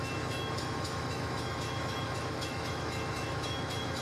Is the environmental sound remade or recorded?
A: remade